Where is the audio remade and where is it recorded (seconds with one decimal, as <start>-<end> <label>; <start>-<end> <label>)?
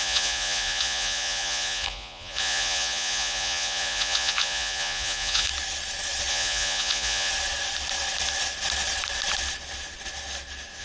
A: 0.0-5.5 remade; 5.5-6.3 recorded; 6.3-7.3 remade; 7.3-10.8 recorded